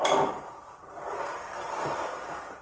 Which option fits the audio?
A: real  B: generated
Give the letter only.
A